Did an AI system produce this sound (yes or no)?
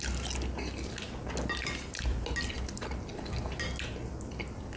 no